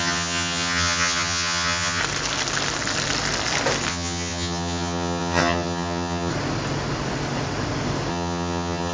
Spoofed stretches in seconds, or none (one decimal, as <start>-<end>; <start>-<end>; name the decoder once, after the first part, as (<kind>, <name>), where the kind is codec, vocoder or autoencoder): 0.0-2.0 (vocoder, HiFi-GAN); 3.9-6.3; 8.1-8.9